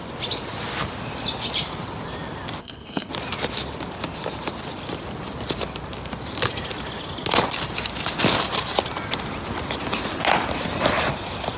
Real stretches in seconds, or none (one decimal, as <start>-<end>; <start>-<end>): 0.0-2.6; 3.1-11.6